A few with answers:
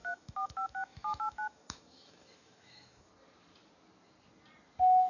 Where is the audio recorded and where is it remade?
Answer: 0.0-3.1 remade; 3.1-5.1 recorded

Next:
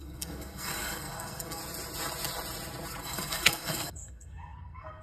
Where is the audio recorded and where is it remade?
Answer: 0.0-1.6 remade; 1.6-3.0 recorded; 3.0-5.0 remade

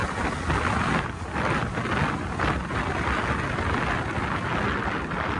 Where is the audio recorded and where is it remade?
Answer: 0.0-5.4 recorded

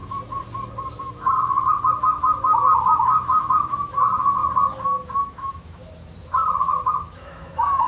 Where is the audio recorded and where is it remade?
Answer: 0.0-1.0 recorded; 1.0-4.4 remade; 4.4-5.2 recorded; 5.2-5.8 remade; 5.8-6.6 recorded; 6.6-7.9 remade

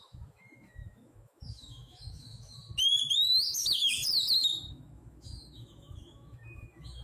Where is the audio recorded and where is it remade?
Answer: 0.0-2.6 remade; 2.6-3.5 recorded; 3.5-4.0 remade; 4.0-4.7 recorded; 4.7-7.0 remade

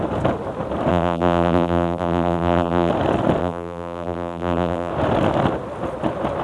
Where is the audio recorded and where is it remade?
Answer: 0.0-0.9 recorded; 0.9-2.9 remade; 2.9-3.4 recorded; 3.4-4.9 remade; 4.9-6.4 recorded

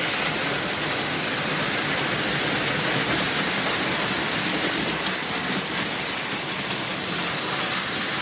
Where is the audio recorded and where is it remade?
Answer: 0.0-8.2 recorded

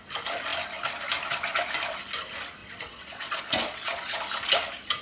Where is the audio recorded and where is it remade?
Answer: 0.0-2.6 recorded; 2.6-4.2 remade; 4.2-5.0 recorded